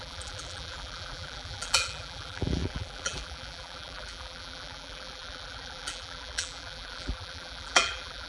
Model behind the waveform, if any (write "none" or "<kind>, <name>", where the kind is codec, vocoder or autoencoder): vocoder, BigVGAN v2